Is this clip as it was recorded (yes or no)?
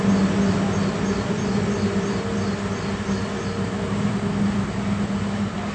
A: yes